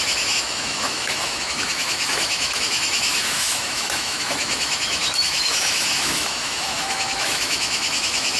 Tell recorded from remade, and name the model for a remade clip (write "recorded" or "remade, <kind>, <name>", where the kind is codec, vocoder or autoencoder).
remade, autoencoder, DAC-VAE